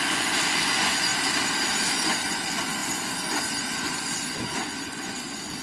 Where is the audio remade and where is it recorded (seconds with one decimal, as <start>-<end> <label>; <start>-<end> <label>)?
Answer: 0.0-1.1 remade; 1.1-1.9 recorded; 1.9-5.6 remade